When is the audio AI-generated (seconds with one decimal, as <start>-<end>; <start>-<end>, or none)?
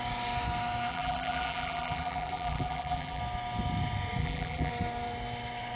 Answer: 0.9-3.2; 4.2-4.7